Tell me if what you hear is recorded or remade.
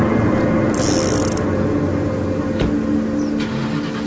recorded